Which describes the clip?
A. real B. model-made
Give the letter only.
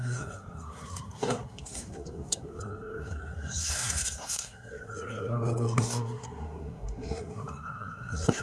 B